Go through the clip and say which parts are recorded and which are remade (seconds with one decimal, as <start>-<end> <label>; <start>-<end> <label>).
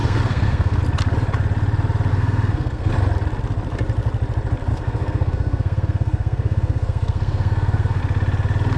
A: 0.0-0.8 remade; 0.8-2.1 recorded; 2.1-2.9 remade; 2.9-4.7 recorded; 4.7-8.0 remade; 8.0-8.8 recorded